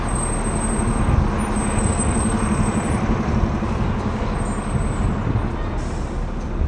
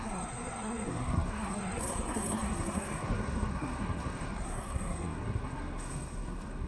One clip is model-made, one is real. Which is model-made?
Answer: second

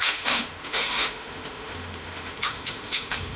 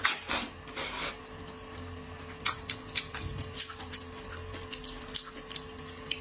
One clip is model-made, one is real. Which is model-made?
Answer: first